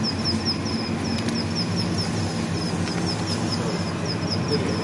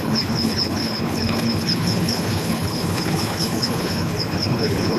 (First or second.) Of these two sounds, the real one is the first